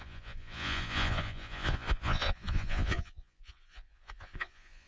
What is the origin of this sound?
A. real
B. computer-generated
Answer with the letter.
B